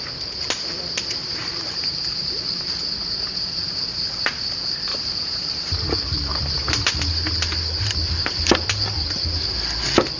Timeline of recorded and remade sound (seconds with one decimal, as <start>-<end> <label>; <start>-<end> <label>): 0.0-1.4 recorded; 1.4-2.8 remade; 2.8-4.9 recorded; 4.9-6.9 remade; 6.9-10.2 recorded